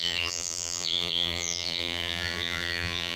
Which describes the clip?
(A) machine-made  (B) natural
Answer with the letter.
A